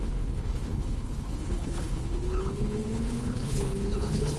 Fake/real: fake